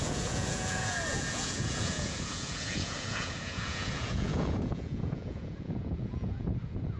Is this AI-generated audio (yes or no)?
yes